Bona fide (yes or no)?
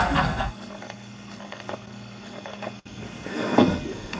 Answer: no